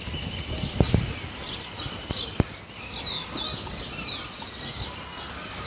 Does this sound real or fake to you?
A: real